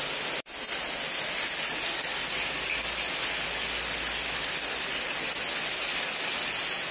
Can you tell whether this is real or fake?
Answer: real